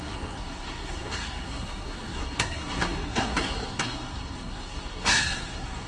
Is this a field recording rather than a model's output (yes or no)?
no